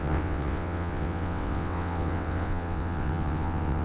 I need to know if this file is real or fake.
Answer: fake